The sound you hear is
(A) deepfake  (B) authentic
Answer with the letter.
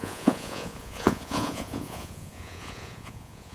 A